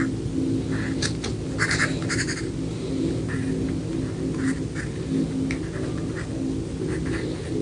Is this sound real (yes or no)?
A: yes